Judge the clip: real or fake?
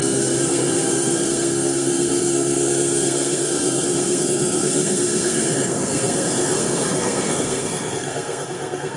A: fake